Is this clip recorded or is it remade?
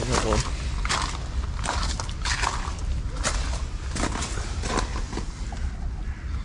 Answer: recorded